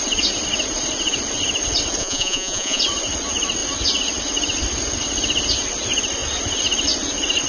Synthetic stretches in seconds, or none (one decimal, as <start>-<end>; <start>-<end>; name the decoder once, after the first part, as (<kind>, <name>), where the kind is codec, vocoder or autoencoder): 2.0-2.8 (vocoder, Vocos)